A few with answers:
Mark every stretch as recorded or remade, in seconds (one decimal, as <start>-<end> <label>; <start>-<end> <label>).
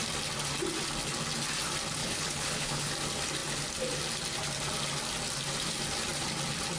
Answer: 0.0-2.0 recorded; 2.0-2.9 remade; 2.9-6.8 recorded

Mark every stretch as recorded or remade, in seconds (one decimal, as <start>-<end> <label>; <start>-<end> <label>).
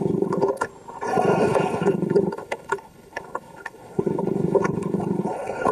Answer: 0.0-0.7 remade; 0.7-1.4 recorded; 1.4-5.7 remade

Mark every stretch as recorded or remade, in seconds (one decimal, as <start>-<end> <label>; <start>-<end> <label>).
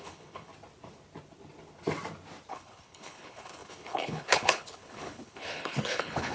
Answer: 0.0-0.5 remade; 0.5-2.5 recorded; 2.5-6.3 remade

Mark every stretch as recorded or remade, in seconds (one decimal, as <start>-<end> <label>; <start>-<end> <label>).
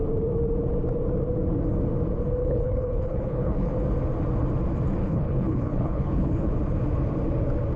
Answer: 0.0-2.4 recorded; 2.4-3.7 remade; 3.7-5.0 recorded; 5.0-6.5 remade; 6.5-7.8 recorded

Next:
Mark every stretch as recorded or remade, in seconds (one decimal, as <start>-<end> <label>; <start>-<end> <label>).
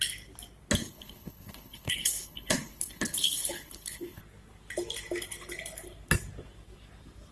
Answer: 0.0-0.8 recorded; 0.8-4.2 remade; 4.2-7.3 recorded